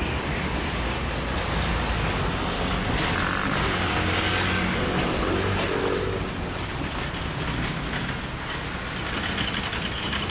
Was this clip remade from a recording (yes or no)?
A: no